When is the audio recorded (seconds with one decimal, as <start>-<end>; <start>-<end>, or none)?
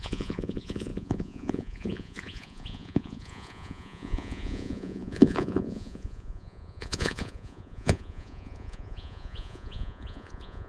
none